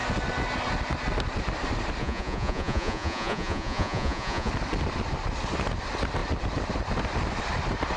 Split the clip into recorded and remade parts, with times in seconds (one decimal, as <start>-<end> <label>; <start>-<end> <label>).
0.0-2.0 recorded; 2.0-4.5 remade; 4.5-8.0 recorded